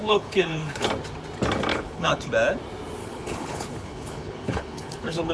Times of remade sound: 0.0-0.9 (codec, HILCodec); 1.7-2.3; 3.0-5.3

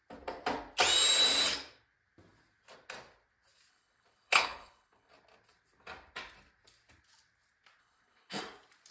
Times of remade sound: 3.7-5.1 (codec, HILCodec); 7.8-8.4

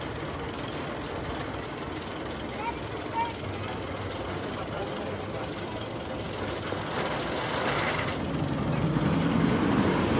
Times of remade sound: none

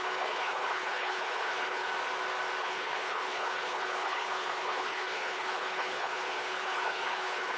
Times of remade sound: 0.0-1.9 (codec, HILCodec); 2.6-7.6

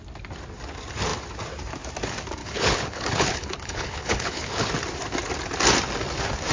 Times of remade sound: 2.4-4.7 (codec, HILCodec)